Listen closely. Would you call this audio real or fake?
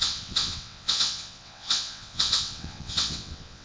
fake